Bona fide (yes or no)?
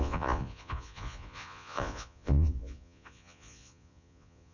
no